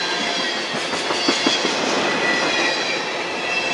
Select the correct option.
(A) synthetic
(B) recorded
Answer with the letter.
B